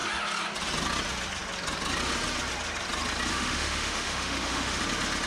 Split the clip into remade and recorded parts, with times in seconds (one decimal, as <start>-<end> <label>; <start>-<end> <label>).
0.0-3.3 recorded; 3.3-4.8 remade; 4.8-5.3 recorded